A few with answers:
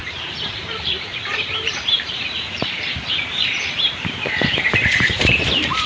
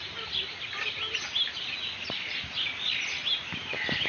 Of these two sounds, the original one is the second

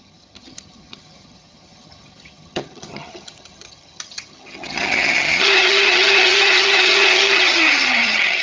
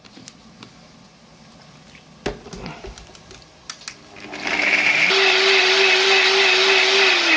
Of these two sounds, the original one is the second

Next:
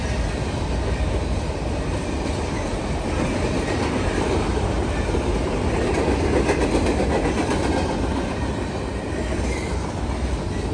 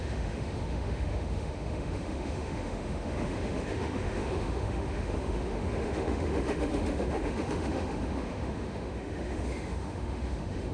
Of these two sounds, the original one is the first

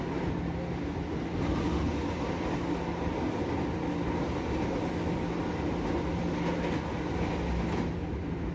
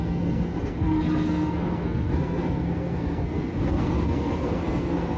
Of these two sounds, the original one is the first